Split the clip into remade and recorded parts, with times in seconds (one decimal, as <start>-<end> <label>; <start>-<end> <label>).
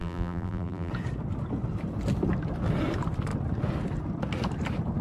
0.0-0.9 remade; 0.9-5.0 recorded